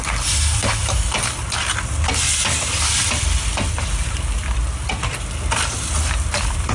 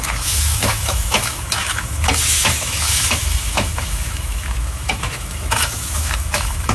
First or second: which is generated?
second